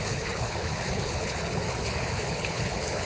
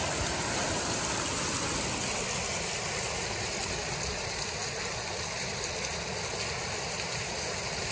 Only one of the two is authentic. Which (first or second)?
second